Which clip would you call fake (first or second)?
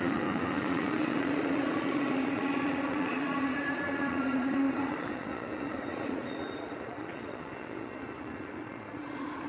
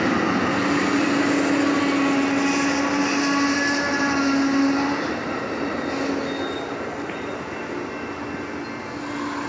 first